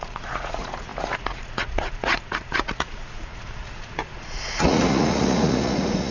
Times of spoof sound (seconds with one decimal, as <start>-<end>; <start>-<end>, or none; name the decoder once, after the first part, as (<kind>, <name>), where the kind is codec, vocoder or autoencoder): 0.0-6.1 (vocoder, Vocos)